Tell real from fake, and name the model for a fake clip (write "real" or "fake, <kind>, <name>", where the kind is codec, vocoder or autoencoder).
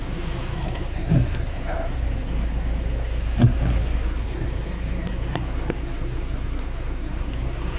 fake, codec, SNAC